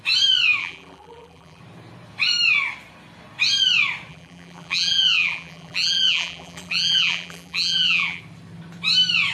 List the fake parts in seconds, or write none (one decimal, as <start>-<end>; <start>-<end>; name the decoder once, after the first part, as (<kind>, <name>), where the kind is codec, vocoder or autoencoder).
0.6-1.6 (vocoder, BigVGAN v2); 4.1-8.2